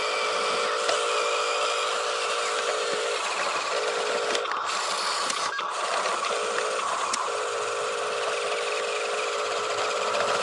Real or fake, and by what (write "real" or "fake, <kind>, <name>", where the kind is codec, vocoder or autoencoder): real